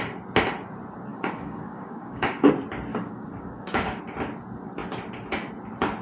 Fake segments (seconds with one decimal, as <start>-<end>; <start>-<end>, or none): 1.1-2.5; 2.9-4.0